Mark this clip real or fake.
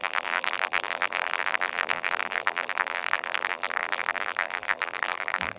fake